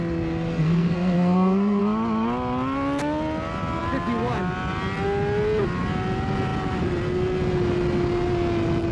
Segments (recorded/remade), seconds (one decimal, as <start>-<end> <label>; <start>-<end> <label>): 0.0-0.5 recorded; 0.5-1.8 remade; 1.8-8.9 recorded